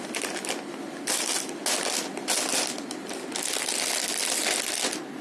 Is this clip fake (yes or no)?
no